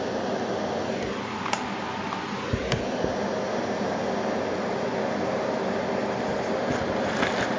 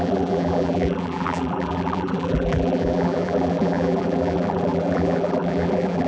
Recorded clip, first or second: first